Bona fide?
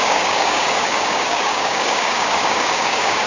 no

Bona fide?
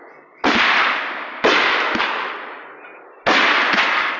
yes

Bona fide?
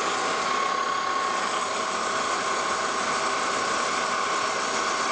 yes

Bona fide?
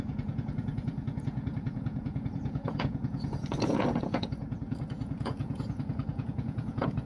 no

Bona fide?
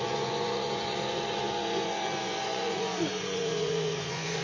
no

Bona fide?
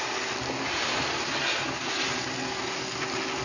yes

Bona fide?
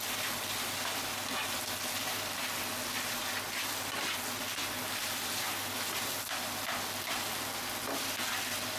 yes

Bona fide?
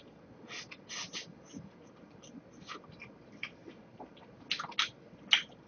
yes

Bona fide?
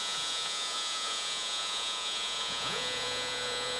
no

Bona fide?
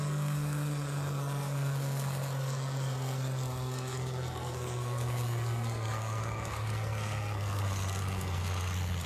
no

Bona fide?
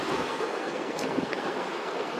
no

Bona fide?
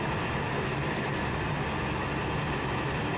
yes